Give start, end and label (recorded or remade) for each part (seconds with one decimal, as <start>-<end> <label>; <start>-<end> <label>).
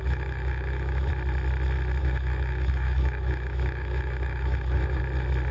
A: 0.0-1.1 remade; 1.1-2.0 recorded; 2.0-5.0 remade; 5.0-5.5 recorded